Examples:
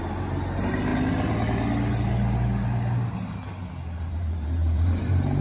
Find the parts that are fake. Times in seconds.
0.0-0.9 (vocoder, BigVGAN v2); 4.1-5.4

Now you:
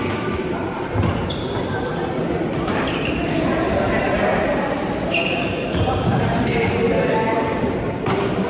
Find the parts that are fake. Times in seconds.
0.0-1.9 (vocoder, BigVGAN v2); 4.0-6.5; 7.6-8.5

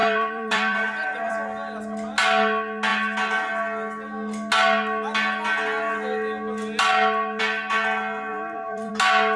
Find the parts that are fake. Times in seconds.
0.0-1.3 (vocoder, BigVGAN v2); 8.3-8.9

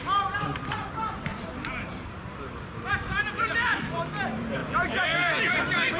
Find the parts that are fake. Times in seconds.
0.0-1.3 (vocoder, BigVGAN v2); 2.9-4.6; 5.5-6.0

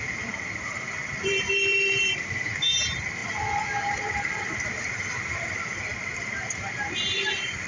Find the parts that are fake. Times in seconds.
0.0-3.2 (vocoder, BigVGAN v2); 3.8-7.7

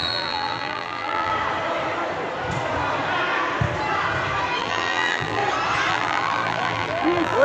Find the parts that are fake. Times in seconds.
0.0-1.3 (vocoder, BigVGAN v2); 4.6-5.4; 5.9-7.4